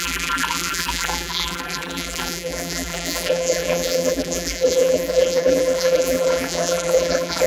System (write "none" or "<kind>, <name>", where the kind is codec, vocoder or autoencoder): vocoder, BigVGAN v2